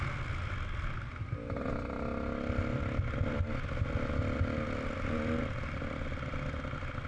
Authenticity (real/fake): real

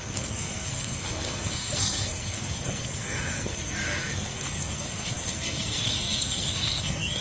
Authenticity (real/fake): fake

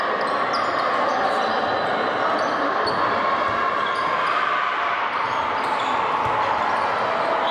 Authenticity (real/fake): real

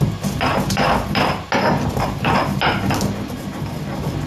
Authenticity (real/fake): real